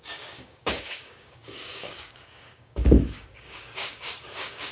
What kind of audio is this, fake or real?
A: fake